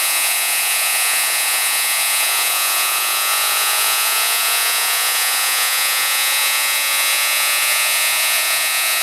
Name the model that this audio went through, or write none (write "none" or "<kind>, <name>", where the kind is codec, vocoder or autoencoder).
vocoder, Vocos